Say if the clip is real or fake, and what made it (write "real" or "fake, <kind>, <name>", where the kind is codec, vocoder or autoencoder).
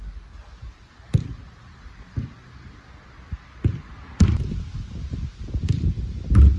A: real